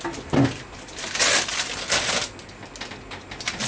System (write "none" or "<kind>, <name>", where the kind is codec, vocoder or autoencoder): none